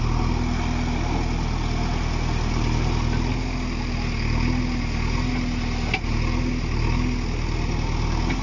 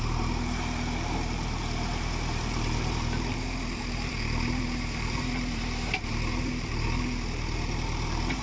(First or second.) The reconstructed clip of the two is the second